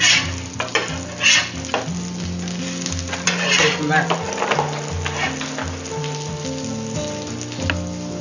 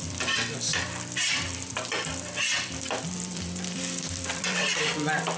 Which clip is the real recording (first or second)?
first